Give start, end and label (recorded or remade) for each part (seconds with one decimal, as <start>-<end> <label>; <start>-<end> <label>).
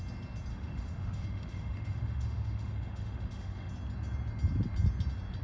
0.0-0.5 recorded; 0.5-3.7 remade; 3.7-5.4 recorded